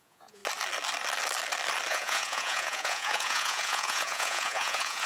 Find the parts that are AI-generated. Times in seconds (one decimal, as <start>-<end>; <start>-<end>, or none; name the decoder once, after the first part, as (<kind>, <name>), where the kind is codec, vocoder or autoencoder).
0.0-0.4 (vocoder, Vocos); 1.9-5.1